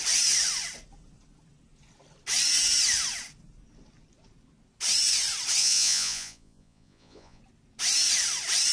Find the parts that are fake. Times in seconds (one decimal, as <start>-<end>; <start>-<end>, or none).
5.6-7.4